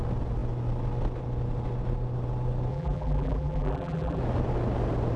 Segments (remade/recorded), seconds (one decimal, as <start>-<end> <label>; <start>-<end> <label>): 0.0-2.7 recorded; 2.7-4.2 remade; 4.2-5.2 recorded